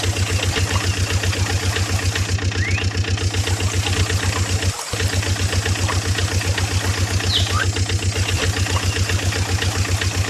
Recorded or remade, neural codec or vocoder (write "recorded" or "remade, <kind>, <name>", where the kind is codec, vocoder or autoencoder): recorded